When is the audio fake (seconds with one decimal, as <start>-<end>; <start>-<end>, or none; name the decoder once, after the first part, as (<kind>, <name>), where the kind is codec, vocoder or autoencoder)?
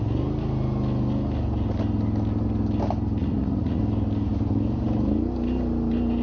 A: 3.2-3.8 (vocoder, Vocos)